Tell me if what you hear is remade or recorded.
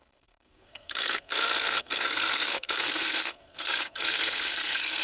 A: remade